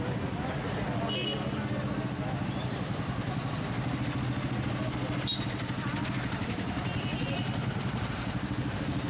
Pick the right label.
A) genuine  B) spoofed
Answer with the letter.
A